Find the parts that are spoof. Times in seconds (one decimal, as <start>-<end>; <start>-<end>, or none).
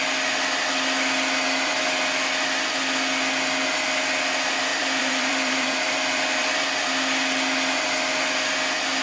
4.7-6.9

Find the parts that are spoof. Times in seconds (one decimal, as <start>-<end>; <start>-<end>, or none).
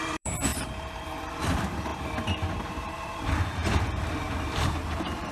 0.0-1.9; 2.7-5.3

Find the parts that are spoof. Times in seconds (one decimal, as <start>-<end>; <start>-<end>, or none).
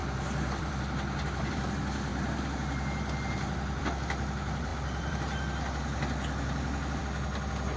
0.0-1.6; 2.1-3.8; 4.7-7.0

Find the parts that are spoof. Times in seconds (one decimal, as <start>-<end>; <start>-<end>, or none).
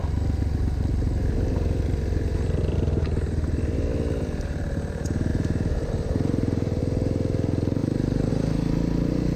5.3-6.8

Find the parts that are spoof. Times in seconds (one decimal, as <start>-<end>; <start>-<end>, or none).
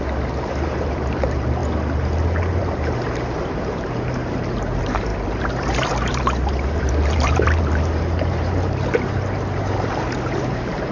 0.0-1.6; 2.6-10.9